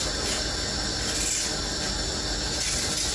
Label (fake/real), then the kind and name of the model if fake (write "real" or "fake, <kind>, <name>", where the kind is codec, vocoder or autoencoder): real